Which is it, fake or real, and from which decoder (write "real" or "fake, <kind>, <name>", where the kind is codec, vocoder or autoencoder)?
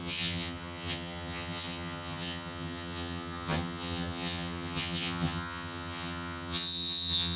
fake, vocoder, HiFi-GAN